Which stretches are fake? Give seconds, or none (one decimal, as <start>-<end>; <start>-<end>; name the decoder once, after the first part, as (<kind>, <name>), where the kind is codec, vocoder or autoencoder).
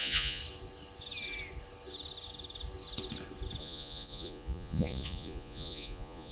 0.0-0.4 (vocoder, Vocos); 3.6-6.3